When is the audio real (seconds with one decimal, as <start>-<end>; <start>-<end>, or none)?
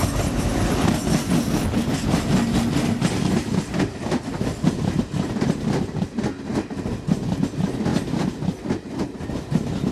0.0-3.4; 4.3-9.9